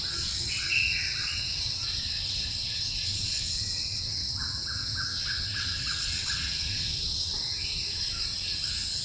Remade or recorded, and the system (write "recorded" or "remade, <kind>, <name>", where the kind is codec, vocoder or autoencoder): remade, vocoder, WaveNeXt